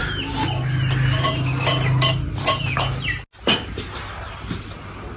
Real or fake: real